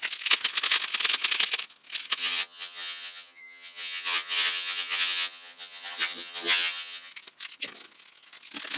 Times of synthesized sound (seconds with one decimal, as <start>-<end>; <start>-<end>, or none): 2.2-7.1

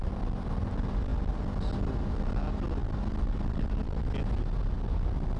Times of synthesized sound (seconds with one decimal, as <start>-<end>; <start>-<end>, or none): none

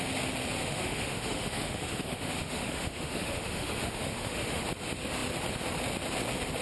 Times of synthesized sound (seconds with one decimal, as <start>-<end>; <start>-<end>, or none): 0.6-4.6

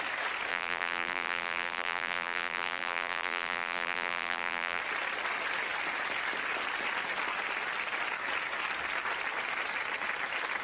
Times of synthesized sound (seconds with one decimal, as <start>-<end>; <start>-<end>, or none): 0.5-4.8

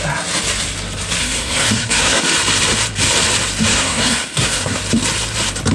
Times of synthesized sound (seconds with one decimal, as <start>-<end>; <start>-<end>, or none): 1.2-2.2; 3.7-4.8

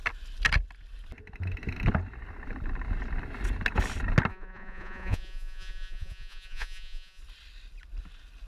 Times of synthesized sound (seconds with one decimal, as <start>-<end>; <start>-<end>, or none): 4.3-7.2

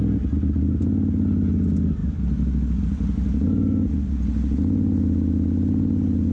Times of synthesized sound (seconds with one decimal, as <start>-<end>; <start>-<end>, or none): none

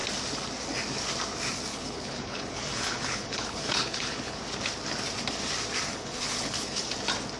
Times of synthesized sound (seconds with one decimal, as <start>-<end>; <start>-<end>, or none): 1.7-4.4; 5.9-6.9